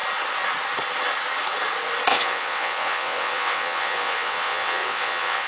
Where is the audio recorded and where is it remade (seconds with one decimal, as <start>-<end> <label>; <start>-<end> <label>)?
0.0-2.1 recorded; 2.1-5.5 remade